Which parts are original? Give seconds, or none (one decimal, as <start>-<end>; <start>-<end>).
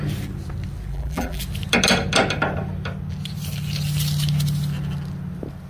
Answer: 0.0-0.9; 1.4-5.7